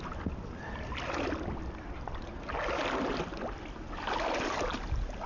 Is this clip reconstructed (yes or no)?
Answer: no